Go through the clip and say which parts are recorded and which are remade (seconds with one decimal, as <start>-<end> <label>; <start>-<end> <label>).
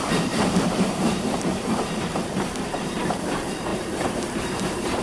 0.0-5.0 remade